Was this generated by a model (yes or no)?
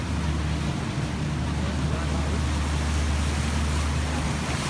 no